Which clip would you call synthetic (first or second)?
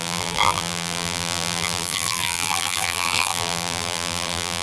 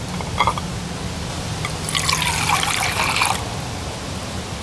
first